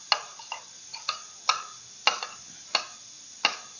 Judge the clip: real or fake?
real